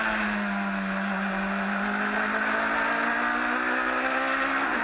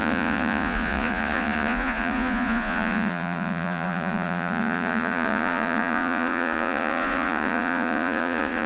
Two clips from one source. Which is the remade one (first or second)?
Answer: second